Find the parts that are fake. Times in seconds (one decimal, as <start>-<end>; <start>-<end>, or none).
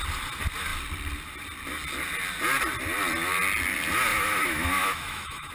4.1-5.5